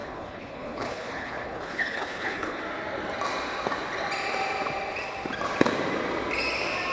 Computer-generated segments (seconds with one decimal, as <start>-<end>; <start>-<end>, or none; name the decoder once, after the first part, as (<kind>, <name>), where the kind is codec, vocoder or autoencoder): 0.0-2.6 (codec, HILCodec)